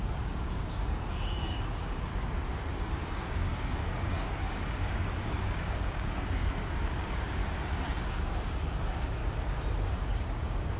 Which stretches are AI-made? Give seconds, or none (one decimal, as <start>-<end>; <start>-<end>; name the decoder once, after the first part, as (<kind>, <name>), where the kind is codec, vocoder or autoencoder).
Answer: 0.0-2.1 (codec, DAC); 2.7-7.4; 8.1-9.2; 9.8-10.8